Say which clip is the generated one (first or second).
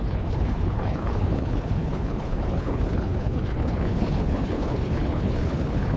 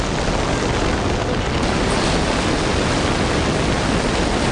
first